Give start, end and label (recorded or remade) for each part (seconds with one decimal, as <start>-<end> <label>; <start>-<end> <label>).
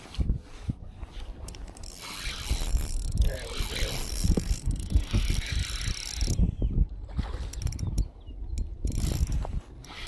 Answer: 0.0-4.1 recorded; 4.1-5.5 remade; 5.5-10.1 recorded